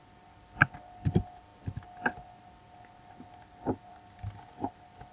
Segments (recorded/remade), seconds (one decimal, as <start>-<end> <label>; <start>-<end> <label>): 0.0-5.1 recorded